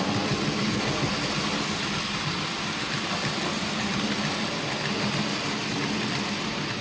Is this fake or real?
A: real